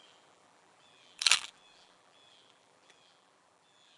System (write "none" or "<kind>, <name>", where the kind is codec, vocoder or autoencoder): vocoder, BigVGAN v2